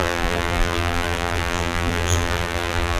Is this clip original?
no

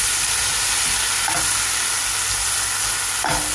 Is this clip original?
yes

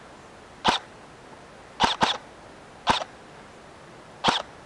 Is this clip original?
yes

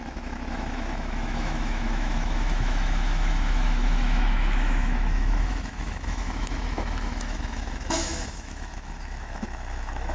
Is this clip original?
no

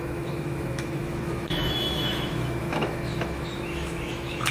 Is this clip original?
no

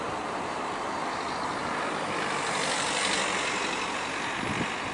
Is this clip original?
yes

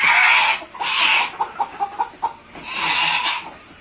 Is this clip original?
yes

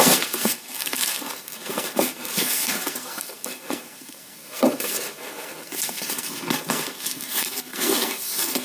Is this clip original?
no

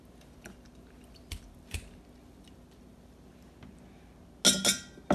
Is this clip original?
yes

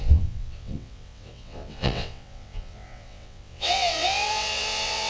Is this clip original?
no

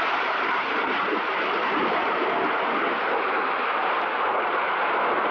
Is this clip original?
yes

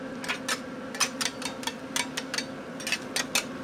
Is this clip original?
yes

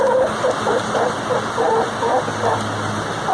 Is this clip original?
yes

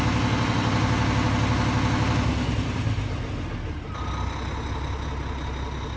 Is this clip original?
yes